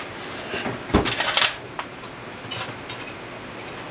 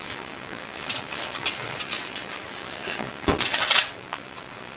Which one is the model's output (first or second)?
second